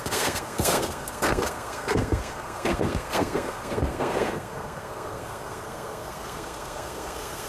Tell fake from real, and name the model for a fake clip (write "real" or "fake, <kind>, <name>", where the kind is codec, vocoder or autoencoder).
fake, codec, SNAC